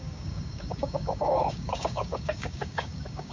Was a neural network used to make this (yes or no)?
yes